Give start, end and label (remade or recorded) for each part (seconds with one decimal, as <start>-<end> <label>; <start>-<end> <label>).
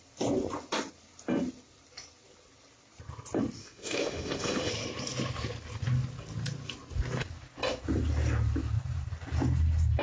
0.0-3.6 recorded; 3.6-4.7 remade; 4.7-10.0 recorded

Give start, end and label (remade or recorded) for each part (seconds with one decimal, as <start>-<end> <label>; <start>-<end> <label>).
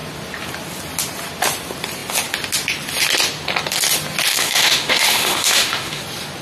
0.0-4.3 recorded; 4.3-6.0 remade; 6.0-6.4 recorded